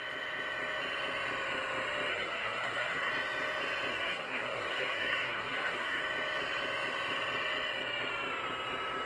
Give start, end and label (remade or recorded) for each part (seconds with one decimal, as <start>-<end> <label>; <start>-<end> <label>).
0.0-2.1 recorded; 2.1-3.1 remade; 3.1-3.9 recorded; 3.9-6.0 remade; 6.0-9.1 recorded